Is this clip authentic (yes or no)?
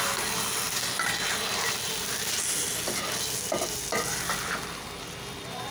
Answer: yes